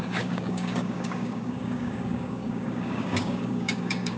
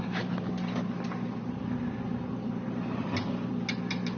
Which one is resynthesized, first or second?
first